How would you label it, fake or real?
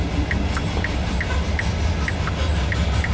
real